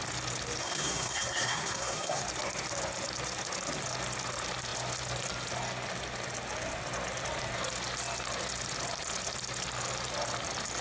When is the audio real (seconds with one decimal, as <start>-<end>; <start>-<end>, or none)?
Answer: 0.0-0.6; 2.2-10.8